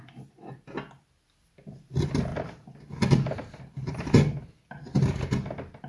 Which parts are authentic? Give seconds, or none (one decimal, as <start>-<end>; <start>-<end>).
0.0-5.9